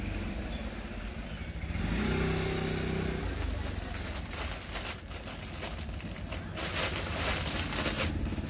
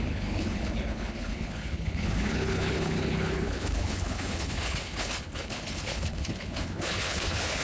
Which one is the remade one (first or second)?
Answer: second